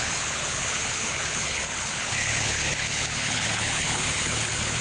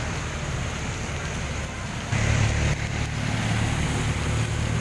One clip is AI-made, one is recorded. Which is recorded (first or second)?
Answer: second